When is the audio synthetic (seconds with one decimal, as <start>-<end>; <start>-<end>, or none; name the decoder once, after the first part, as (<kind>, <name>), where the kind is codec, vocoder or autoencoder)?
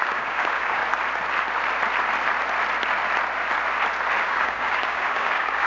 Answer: 0.0-0.8 (codec, DAC); 4.2-5.7